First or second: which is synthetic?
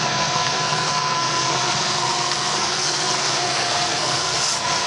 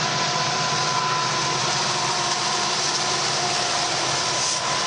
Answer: first